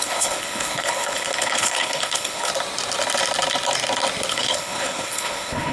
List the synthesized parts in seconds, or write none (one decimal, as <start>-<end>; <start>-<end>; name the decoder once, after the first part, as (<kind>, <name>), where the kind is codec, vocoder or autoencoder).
0.0-2.5 (codec, HILCodec); 4.3-5.7